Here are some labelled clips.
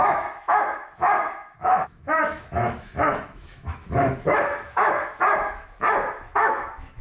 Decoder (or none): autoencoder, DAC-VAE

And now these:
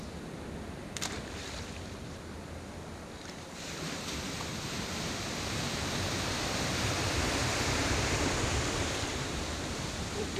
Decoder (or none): vocoder, BigVGAN v2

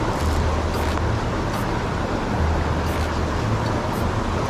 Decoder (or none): none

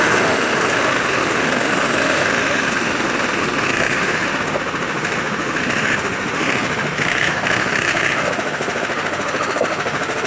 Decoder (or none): autoencoder, DAC-VAE